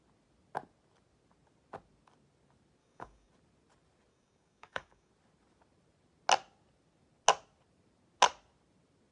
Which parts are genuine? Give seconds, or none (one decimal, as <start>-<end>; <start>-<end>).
0.0-2.8; 3.3-4.1; 5.1-9.1